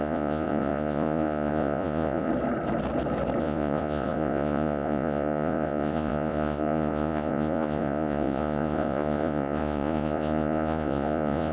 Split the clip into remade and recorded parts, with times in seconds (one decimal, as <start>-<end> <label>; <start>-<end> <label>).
0.0-2.3 remade; 2.3-3.4 recorded; 3.4-11.5 remade